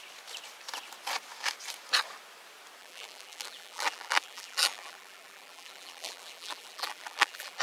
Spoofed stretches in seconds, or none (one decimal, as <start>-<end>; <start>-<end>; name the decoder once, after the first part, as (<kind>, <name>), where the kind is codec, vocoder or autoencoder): 2.8-7.6 (vocoder, BigVGAN v2)